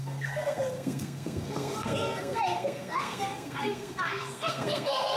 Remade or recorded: remade